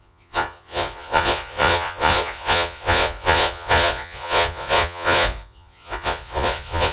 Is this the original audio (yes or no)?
no